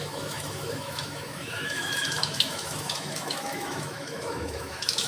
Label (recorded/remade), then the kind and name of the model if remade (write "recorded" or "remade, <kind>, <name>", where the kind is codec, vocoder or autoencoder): remade, autoencoder, DAC-VAE